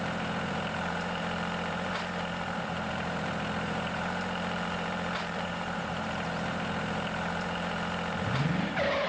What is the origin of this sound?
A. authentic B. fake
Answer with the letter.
B